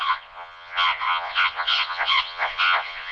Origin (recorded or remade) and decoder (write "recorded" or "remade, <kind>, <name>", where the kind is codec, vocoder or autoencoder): remade, vocoder, Vocos